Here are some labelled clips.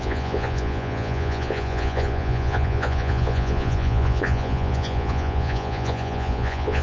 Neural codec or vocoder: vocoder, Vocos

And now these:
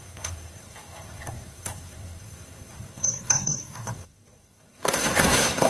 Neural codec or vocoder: codec, SNAC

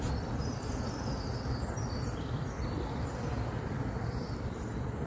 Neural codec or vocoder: none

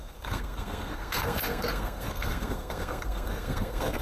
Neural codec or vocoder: codec, SNAC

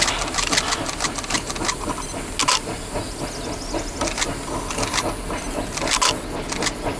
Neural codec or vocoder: none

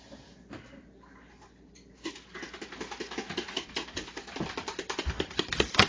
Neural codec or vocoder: none